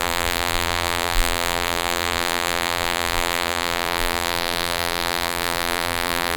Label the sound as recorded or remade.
remade